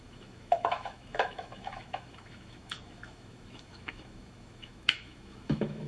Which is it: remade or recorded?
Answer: remade